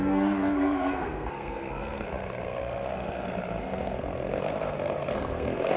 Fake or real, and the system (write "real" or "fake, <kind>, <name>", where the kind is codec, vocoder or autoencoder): fake, codec, SNAC